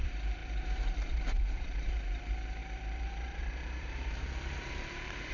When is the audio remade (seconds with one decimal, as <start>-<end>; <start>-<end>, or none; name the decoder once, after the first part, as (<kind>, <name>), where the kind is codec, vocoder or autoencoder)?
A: 0.0-0.4 (vocoder, BigVGAN v2); 1.1-5.3